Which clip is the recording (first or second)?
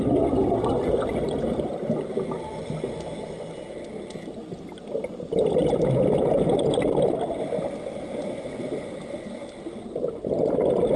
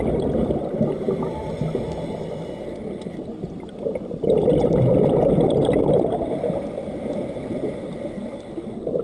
first